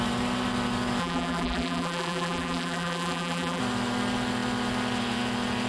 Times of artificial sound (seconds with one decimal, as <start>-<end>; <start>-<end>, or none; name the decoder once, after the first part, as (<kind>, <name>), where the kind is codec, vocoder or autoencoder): 1.0-3.6 (vocoder, BigVGAN v2)